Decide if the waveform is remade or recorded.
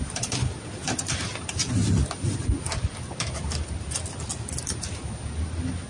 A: recorded